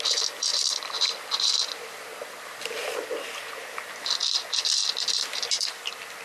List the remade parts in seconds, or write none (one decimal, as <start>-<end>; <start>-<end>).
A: 0.5-3.4; 4.2-5.8